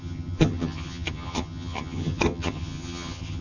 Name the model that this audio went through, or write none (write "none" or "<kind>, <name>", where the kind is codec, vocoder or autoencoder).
vocoder, HiFi-GAN